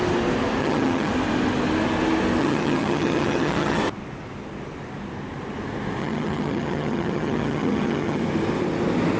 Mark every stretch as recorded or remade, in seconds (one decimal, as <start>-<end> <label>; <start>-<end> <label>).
0.0-0.6 recorded; 0.6-1.1 remade; 1.1-2.4 recorded; 2.4-3.8 remade; 3.8-6.0 recorded; 6.0-8.2 remade; 8.2-9.2 recorded